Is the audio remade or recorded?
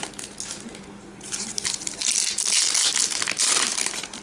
recorded